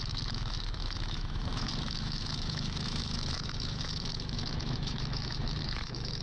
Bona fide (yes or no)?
no